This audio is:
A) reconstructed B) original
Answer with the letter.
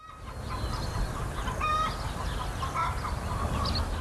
B